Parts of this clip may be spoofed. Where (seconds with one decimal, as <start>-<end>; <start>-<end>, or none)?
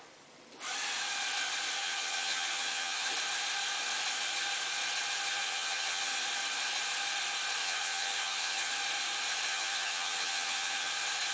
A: 1.8-3.1; 5.4-6.2; 7.6-8.7; 9.5-10.9